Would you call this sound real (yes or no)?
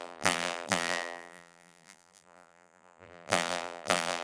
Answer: no